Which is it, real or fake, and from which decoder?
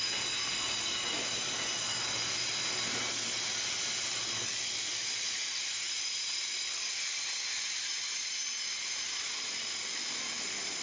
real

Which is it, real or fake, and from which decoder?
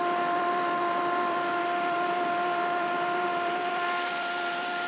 fake, vocoder, BigVGAN v2